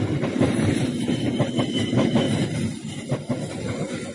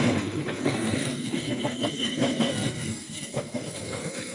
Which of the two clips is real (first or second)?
first